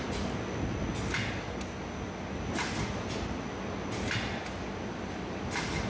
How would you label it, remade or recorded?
recorded